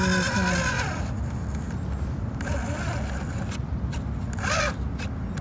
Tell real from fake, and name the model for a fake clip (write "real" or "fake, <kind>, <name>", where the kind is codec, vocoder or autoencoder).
real